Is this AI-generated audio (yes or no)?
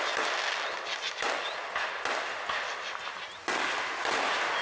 no